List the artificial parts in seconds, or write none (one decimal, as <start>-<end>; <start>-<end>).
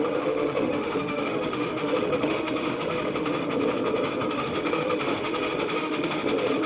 0.0-3.3; 4.3-6.7